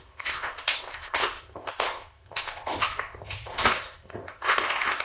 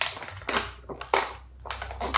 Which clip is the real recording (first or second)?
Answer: second